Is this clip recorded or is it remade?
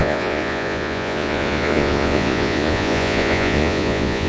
remade